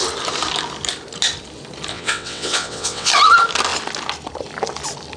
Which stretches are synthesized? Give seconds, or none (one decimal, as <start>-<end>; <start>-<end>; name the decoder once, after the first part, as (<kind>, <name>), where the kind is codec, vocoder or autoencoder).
1.9-3.1 (vocoder, WaveNeXt)